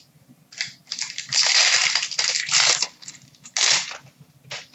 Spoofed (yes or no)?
no